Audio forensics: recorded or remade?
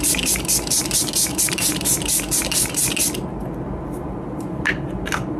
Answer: recorded